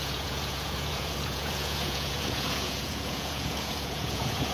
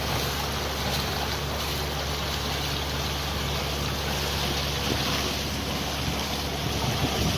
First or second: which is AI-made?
first